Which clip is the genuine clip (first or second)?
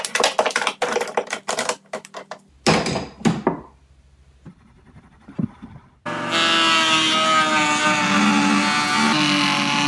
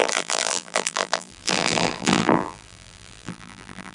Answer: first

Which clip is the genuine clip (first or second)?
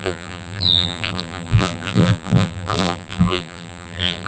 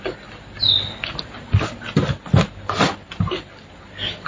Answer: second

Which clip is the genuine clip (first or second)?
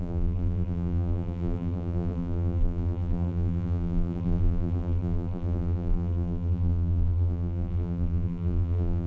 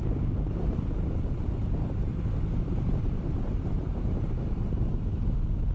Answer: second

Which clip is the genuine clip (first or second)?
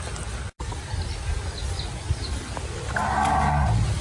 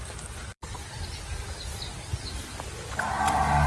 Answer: first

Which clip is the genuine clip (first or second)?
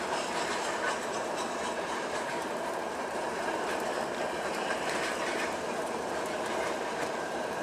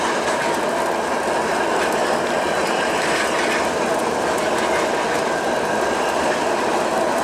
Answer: second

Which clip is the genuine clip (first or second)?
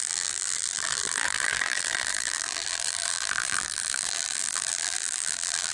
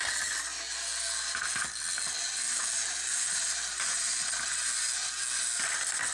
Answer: second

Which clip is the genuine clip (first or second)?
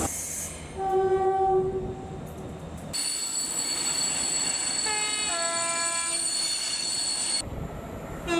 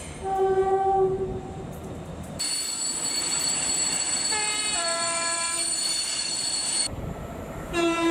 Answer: first